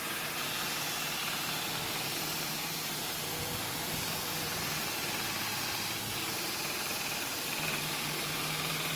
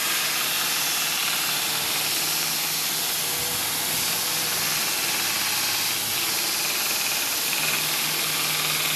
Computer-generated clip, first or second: first